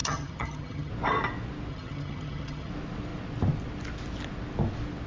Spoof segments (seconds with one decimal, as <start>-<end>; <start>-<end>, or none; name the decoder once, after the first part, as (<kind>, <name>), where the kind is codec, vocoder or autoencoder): 0.0-0.9 (vocoder, HiFi-GAN); 1.7-2.7